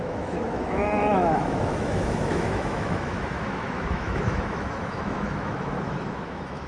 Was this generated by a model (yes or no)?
yes